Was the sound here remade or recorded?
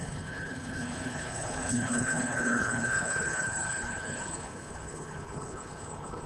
remade